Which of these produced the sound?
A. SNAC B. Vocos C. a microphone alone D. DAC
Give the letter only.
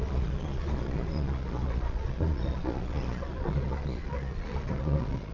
B